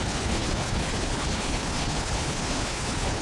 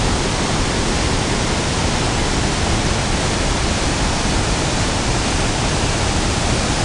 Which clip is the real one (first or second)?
second